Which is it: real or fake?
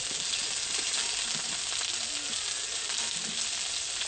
real